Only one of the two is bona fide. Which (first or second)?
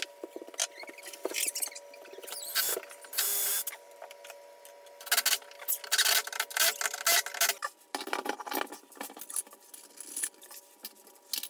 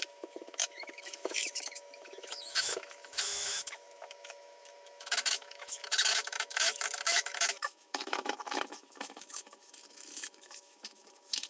first